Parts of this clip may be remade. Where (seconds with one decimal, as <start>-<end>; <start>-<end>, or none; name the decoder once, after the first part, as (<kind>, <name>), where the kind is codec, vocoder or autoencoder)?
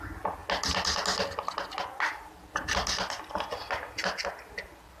none